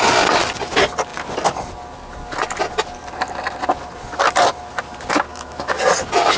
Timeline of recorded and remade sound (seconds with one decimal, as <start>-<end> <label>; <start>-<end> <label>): 0.0-5.3 recorded; 5.3-5.8 remade; 5.8-6.4 recorded